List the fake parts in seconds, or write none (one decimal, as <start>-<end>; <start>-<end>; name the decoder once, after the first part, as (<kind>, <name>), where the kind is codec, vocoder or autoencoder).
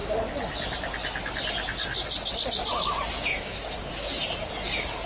3.3-3.9 (codec, DAC)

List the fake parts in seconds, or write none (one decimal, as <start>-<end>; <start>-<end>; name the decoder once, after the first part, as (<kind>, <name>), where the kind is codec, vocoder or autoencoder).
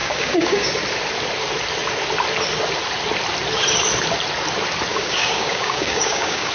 0.0-0.7 (codec, DAC); 4.9-6.5